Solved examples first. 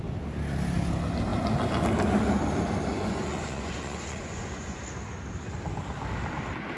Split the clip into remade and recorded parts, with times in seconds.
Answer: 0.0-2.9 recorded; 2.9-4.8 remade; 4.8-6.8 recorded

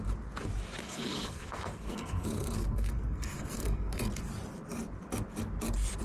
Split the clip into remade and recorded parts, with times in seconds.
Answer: 0.0-0.8 recorded; 0.8-4.1 remade; 4.1-6.0 recorded